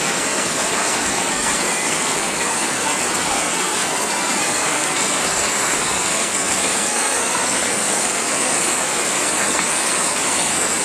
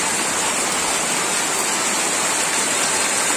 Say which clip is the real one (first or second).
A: second